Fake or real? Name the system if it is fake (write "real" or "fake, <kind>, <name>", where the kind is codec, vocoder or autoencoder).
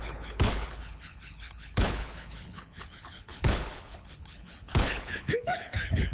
fake, codec, HILCodec